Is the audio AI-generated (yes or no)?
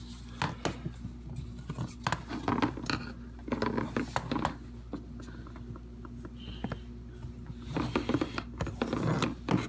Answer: no